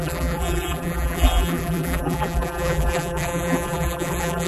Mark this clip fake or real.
fake